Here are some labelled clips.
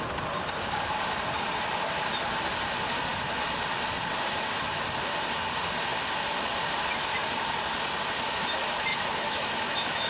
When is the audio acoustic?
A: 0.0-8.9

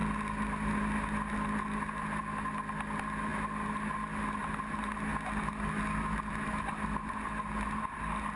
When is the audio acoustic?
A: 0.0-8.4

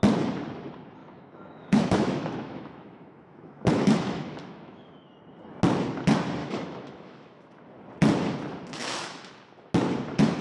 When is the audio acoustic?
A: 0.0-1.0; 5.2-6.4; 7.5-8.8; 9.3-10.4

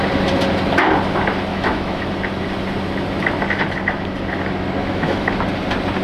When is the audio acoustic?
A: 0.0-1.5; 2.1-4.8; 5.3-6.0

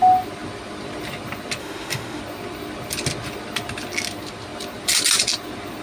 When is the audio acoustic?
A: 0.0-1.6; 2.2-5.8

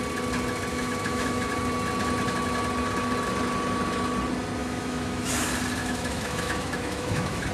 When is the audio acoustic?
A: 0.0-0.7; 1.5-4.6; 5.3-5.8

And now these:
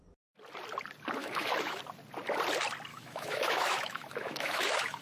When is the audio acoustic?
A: 0.0-1.2; 1.8-2.9

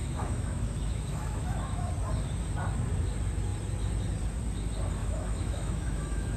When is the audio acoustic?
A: 1.9-5.0